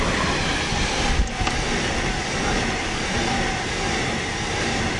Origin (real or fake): real